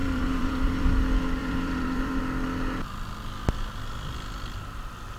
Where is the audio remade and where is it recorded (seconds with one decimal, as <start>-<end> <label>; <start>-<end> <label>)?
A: 0.0-0.9 remade; 0.9-1.4 recorded; 1.4-2.2 remade; 2.2-5.2 recorded